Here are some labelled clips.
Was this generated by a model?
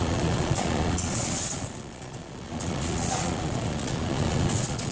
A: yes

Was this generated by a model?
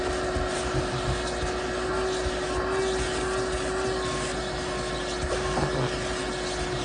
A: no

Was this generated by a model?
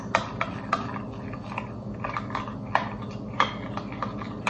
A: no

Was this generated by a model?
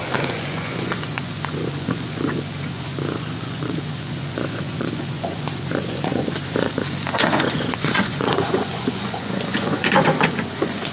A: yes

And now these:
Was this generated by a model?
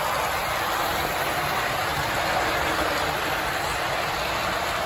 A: no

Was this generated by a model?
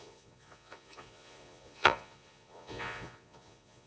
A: yes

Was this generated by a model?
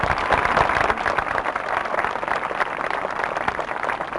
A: no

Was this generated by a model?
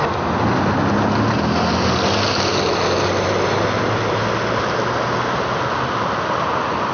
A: no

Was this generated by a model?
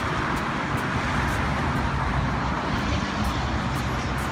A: no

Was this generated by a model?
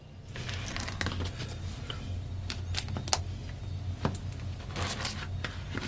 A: no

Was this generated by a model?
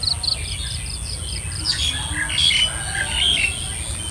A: no